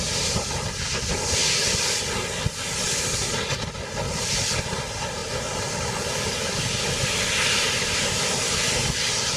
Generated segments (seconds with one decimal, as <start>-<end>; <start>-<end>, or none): none